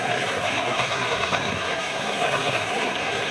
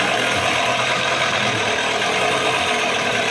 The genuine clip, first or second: second